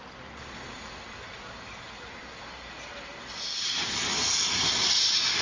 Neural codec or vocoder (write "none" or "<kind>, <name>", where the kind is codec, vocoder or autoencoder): none